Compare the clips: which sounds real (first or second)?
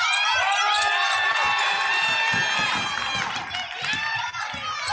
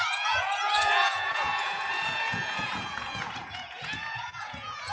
first